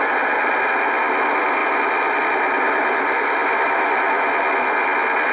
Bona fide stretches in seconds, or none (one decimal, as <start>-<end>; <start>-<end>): 0.0-5.3